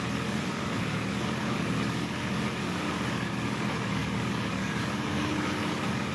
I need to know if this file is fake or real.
fake